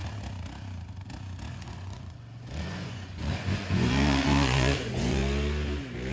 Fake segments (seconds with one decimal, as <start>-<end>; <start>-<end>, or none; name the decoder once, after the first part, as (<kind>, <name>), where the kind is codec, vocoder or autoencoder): 1.5-5.2 (vocoder, Vocos)